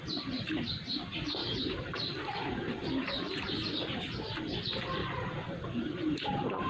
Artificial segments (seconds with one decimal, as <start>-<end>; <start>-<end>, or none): 1.4-4.4; 5.0-6.7

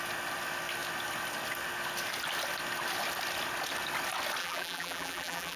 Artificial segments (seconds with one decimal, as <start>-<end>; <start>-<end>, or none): 4.4-5.6